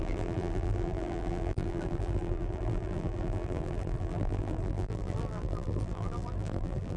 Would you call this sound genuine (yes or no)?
no